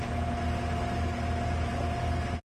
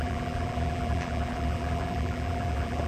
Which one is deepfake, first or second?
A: second